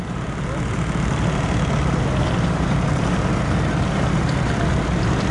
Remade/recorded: recorded